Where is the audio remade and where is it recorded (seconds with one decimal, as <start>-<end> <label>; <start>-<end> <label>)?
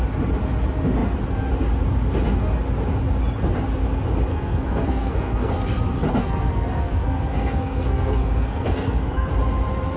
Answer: 0.0-4.3 recorded; 4.3-5.5 remade; 5.5-6.1 recorded; 6.1-9.3 remade; 9.3-10.0 recorded